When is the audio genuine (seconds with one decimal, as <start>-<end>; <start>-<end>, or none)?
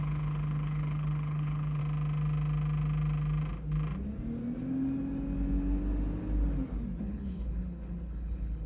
1.8-7.0